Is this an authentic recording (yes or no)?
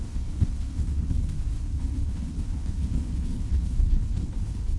no